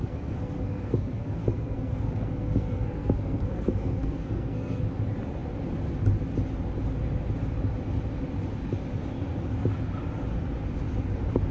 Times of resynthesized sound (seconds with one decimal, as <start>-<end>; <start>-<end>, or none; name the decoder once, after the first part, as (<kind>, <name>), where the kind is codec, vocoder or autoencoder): 0.0-5.0 (codec, SNAC)